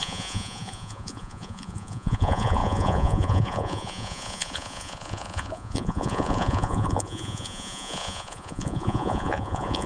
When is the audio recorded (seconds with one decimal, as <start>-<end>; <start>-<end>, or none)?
none

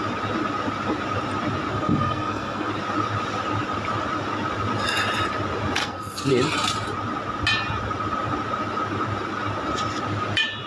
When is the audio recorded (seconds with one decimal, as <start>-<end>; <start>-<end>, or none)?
0.0-1.7; 2.7-5.8; 6.3-10.7

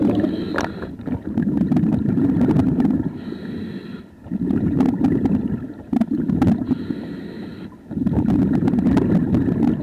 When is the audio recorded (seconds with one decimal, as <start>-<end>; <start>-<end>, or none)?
0.0-7.5; 8.3-9.8

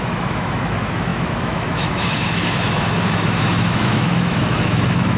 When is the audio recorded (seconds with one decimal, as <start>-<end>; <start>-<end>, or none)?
none

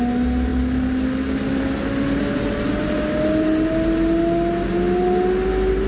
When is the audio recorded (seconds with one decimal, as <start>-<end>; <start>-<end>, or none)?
0.0-5.9

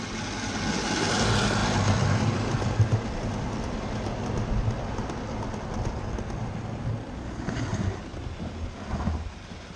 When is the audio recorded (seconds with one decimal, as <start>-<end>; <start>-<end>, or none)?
0.0-9.8

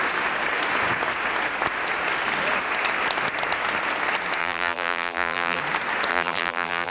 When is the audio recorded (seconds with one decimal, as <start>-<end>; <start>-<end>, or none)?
0.0-4.4; 5.6-6.1

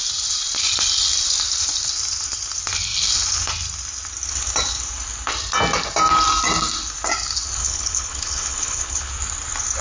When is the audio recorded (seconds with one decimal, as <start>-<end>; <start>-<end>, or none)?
0.0-7.6; 9.1-9.8